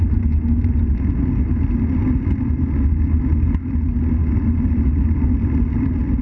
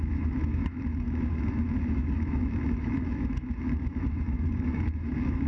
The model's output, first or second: second